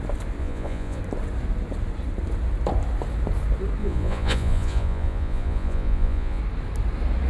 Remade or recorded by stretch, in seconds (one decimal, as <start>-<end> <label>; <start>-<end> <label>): 0.0-0.4 recorded; 0.4-1.0 remade; 1.0-3.8 recorded; 3.8-6.4 remade; 6.4-7.3 recorded